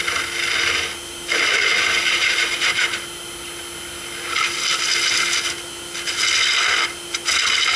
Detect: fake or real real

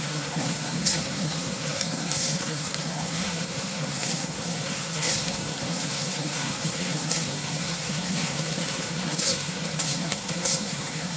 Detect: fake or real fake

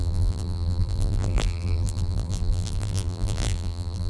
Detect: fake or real fake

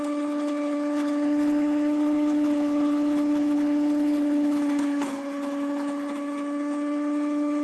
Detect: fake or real fake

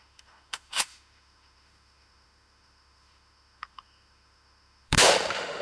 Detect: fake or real fake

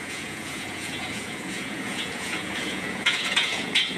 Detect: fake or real fake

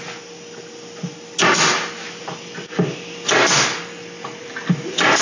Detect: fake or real real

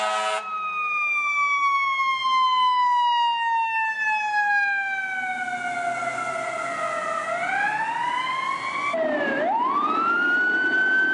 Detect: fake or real real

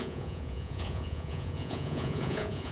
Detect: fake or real fake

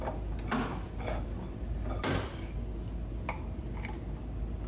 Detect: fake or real real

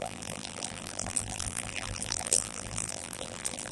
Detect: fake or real fake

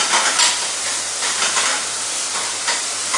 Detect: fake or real real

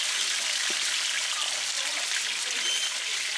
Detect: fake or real real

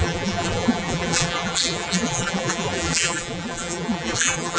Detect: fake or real fake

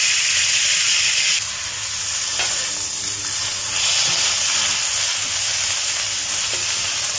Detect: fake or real real